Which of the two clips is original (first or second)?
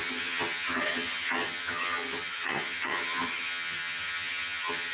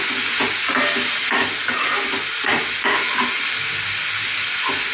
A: second